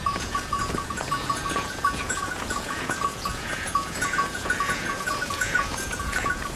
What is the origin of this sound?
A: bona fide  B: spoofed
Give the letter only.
B